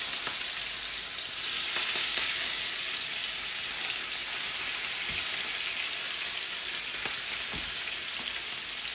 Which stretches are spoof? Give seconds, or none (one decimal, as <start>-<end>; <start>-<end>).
2.0-2.6